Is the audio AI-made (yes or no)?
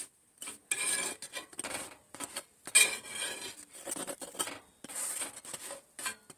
no